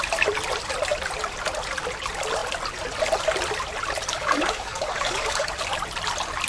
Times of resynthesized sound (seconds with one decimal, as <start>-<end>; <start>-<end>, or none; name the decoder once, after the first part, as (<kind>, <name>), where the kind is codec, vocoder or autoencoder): 4.1-5.5 (codec, DAC)